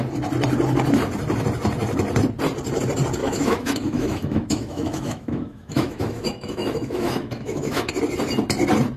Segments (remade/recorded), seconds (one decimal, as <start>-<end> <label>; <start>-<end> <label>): 0.0-3.2 recorded; 3.2-7.9 remade; 7.9-9.0 recorded